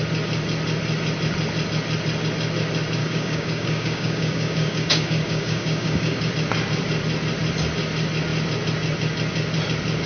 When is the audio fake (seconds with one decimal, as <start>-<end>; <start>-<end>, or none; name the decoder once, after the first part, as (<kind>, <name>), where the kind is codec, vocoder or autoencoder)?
3.0-6.3 (codec, DAC)